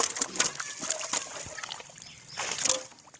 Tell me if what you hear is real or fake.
real